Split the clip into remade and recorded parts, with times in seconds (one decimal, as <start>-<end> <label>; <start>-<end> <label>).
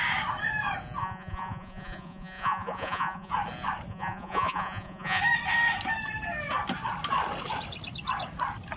0.0-1.0 recorded; 1.0-3.3 remade; 3.3-3.9 recorded; 3.9-5.2 remade; 5.2-8.8 recorded